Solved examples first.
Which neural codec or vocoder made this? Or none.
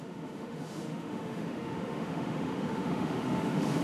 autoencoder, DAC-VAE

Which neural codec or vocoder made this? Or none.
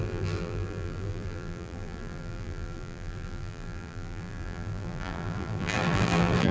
vocoder, BigVGAN v2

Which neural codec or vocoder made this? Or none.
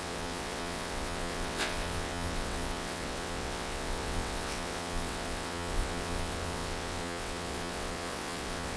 vocoder, WaveNeXt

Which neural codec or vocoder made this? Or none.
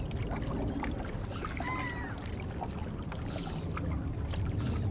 none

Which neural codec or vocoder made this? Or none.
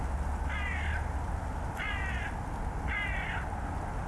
none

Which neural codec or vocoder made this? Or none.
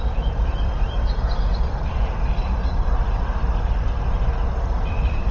vocoder, BigVGAN v2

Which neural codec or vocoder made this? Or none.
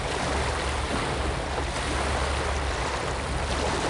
none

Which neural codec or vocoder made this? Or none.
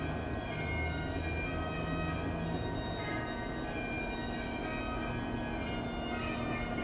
none